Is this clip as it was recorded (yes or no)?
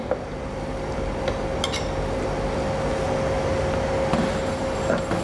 yes